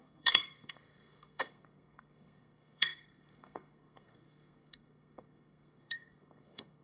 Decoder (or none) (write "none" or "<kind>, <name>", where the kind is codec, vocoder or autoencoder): codec, SNAC